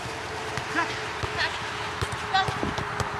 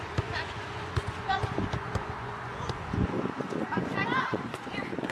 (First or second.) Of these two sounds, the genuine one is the first